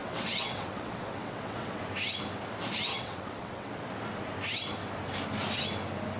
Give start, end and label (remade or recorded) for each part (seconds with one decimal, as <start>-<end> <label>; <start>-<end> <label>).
0.0-1.8 remade; 1.8-2.9 recorded; 2.9-3.7 remade; 3.7-6.2 recorded

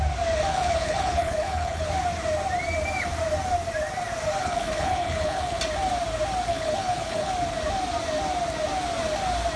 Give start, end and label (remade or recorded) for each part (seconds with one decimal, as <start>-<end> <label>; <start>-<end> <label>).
0.0-0.5 recorded; 0.5-1.9 remade; 1.9-4.4 recorded; 4.4-5.6 remade; 5.6-6.5 recorded; 6.5-7.3 remade; 7.3-9.6 recorded

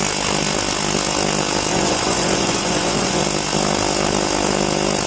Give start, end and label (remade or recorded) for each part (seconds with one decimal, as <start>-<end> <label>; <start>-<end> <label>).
0.0-1.7 recorded; 1.7-3.2 remade; 3.2-5.1 recorded

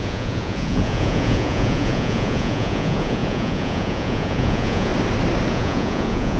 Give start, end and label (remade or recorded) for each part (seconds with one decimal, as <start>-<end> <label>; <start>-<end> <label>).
0.0-4.9 remade; 4.9-5.5 recorded; 5.5-6.4 remade

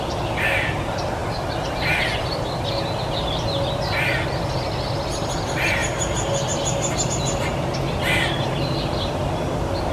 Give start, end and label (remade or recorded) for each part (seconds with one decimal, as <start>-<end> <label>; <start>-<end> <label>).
0.0-9.9 recorded

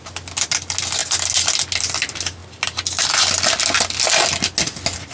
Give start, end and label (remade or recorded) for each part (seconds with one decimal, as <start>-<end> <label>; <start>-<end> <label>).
0.0-5.1 recorded

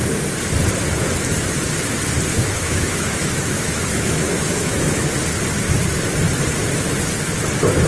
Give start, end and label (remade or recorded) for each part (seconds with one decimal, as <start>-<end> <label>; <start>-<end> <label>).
0.0-2.3 recorded; 2.3-5.1 remade; 5.1-7.9 recorded